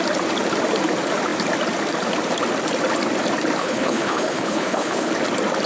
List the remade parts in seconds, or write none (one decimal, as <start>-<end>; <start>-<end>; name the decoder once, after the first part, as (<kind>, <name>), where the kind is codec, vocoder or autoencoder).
3.6-5.1 (codec, HILCodec)